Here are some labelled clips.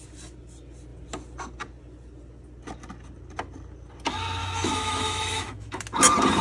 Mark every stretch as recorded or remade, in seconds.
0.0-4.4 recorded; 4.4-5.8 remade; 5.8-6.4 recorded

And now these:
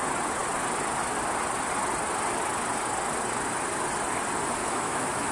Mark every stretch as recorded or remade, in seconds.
0.0-4.6 recorded; 4.6-5.3 remade

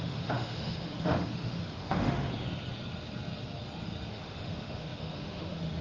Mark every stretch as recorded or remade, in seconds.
0.0-2.3 remade; 2.3-4.1 recorded; 4.1-5.8 remade

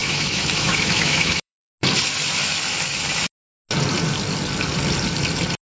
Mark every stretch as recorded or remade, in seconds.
0.0-1.7 remade; 1.7-5.6 recorded

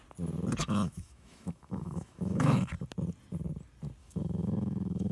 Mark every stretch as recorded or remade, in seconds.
0.0-0.6 recorded; 0.6-2.7 remade; 2.7-4.0 recorded; 4.0-5.1 remade

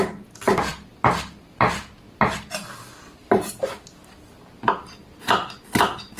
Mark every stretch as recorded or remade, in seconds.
0.0-6.2 recorded

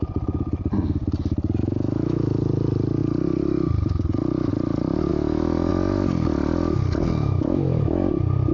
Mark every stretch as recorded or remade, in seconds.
0.0-1.6 recorded; 1.6-2.4 remade; 2.4-5.1 recorded; 5.1-5.7 remade; 5.7-7.2 recorded; 7.2-8.1 remade; 8.1-8.5 recorded

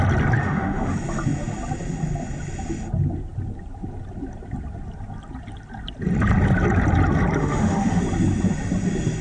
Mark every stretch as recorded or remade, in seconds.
0.0-0.4 recorded; 0.4-0.9 remade; 0.9-7.4 recorded; 7.4-8.0 remade; 8.0-9.2 recorded